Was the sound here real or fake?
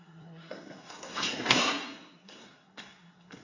fake